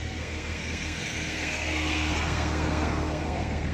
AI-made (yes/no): yes